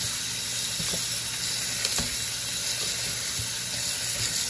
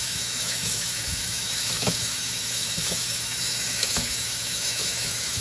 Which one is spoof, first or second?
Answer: second